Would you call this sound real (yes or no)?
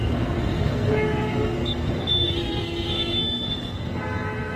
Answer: no